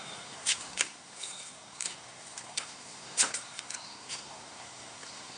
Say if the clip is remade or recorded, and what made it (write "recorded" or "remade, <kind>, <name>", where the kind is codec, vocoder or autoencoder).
remade, codec, SNAC